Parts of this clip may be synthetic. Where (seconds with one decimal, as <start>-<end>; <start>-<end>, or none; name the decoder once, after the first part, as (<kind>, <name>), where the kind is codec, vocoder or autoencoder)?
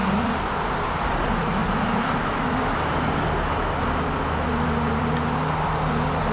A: none